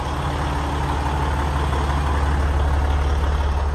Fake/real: real